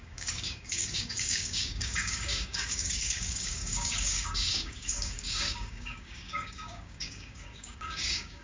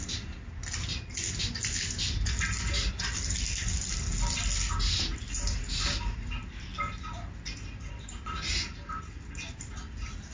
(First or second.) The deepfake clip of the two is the first